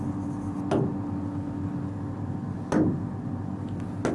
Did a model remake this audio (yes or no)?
no